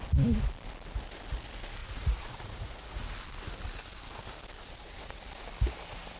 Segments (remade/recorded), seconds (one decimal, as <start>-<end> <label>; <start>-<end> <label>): 0.0-1.8 recorded; 1.8-3.0 remade; 3.0-4.6 recorded; 4.6-5.2 remade; 5.2-6.2 recorded